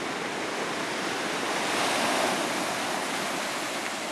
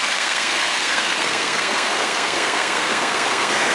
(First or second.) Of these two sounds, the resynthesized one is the second